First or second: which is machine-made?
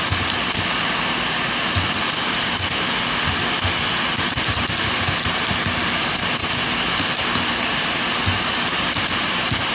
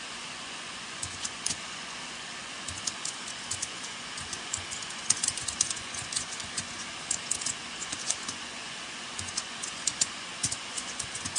second